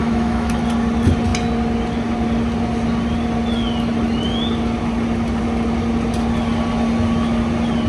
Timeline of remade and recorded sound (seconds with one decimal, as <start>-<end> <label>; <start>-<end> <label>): 0.0-0.6 remade; 0.6-7.9 recorded